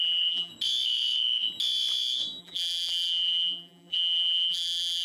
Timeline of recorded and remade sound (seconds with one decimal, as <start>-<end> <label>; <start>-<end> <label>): 0.0-0.5 remade; 0.5-2.4 recorded; 2.4-5.0 remade